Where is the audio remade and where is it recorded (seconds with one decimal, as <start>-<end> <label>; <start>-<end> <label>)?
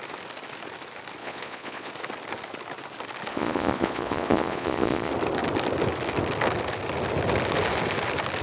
0.0-1.2 recorded; 1.2-1.9 remade; 1.9-3.3 recorded; 3.3-5.1 remade; 5.1-8.4 recorded